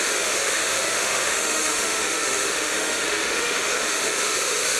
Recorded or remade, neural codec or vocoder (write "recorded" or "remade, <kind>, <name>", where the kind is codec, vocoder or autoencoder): remade, autoencoder, DAC-VAE